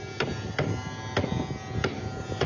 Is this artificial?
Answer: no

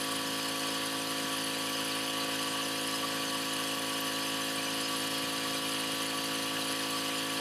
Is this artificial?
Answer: no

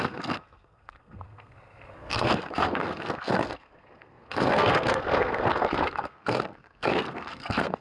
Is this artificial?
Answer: yes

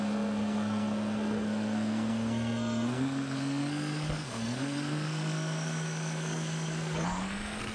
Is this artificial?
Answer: yes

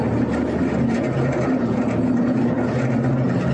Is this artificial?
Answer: no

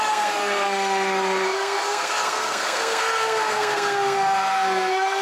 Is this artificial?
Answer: yes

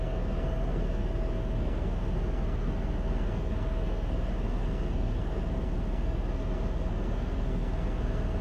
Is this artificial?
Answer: yes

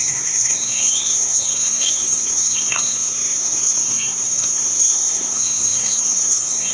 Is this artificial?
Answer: yes